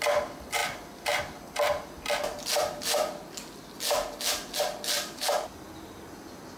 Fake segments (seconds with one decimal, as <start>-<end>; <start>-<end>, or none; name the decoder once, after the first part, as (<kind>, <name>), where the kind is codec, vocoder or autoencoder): none

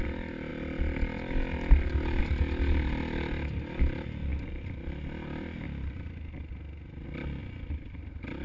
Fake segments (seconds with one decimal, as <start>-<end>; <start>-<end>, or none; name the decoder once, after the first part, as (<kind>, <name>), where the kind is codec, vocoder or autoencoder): none

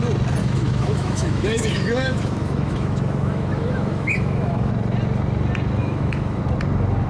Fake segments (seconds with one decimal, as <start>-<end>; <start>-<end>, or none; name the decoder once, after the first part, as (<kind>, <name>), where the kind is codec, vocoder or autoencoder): 0.4-4.7 (autoencoder, DAC-VAE); 5.8-6.4

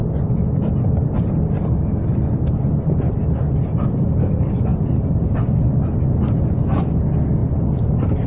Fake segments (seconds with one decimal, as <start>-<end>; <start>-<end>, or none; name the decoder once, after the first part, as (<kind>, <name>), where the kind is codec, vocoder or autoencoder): none

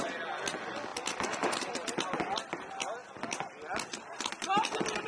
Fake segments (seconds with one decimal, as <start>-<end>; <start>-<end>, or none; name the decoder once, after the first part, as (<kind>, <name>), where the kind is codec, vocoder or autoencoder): none